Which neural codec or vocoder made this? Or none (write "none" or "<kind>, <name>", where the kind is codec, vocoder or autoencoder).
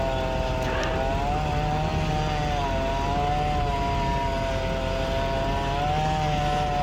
none